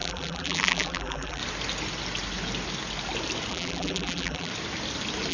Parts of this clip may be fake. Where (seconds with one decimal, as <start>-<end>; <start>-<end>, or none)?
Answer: 0.0-1.4; 3.5-4.5